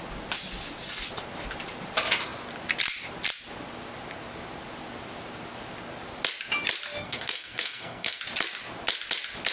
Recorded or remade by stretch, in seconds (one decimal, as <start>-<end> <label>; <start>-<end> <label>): 0.0-7.0 recorded; 7.0-8.2 remade; 8.2-9.5 recorded